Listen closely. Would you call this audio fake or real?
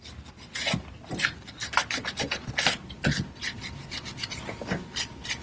real